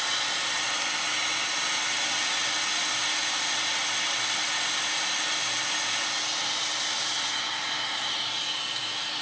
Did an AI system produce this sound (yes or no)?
no